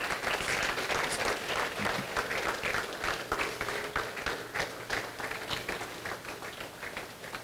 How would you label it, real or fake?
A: real